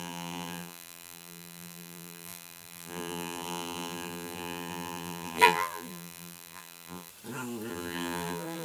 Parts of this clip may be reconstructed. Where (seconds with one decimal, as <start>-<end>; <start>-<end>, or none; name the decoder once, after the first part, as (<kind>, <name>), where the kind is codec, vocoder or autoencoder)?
0.0-7.1 (vocoder, BigVGAN v2); 7.7-8.6